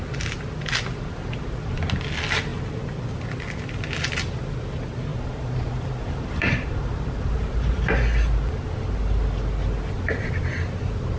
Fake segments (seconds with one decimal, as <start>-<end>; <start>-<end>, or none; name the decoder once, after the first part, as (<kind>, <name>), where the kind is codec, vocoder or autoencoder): 5.1-7.7 (vocoder, BigVGAN v2)